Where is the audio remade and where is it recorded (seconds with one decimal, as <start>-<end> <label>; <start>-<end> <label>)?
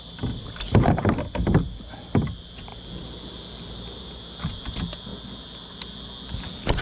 0.0-6.8 recorded